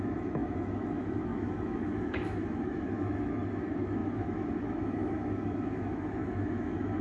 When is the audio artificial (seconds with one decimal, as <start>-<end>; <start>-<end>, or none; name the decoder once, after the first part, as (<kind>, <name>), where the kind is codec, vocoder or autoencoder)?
0.0-7.0 (autoencoder, DAC-VAE)